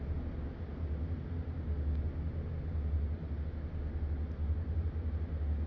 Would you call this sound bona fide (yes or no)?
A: yes